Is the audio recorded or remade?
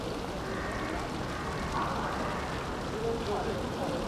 recorded